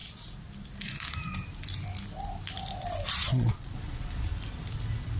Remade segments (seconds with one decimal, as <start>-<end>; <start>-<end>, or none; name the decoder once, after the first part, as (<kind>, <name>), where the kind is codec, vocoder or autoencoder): 3.1-4.3 (vocoder, Vocos)